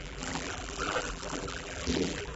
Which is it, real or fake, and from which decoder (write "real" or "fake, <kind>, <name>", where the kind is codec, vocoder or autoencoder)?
fake, vocoder, BigVGAN v2